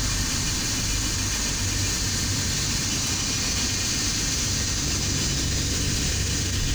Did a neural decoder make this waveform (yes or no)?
no